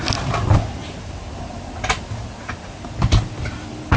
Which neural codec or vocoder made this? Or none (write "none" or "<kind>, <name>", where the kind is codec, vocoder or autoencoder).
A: none